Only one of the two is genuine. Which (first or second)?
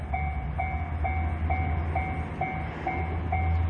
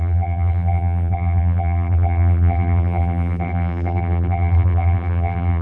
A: first